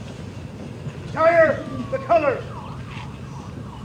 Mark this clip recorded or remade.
recorded